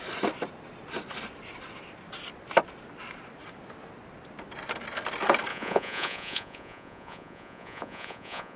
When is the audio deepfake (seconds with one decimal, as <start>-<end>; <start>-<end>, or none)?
5.5-8.6